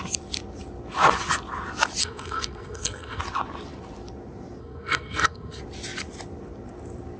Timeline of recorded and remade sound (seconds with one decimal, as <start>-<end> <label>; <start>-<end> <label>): 0.0-2.0 recorded; 2.0-3.2 remade; 3.2-4.6 recorded; 4.6-5.6 remade; 5.6-7.2 recorded